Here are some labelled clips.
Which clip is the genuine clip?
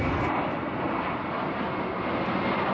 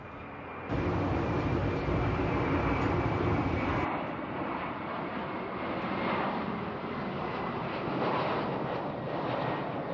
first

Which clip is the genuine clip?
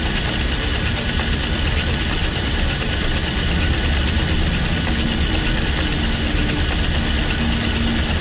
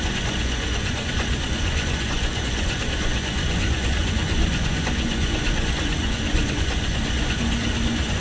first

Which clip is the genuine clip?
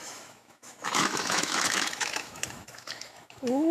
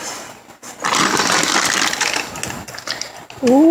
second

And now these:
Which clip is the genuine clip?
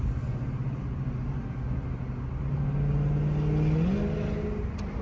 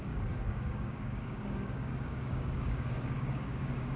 first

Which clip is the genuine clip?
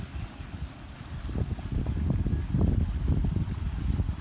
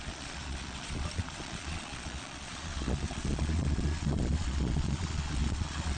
first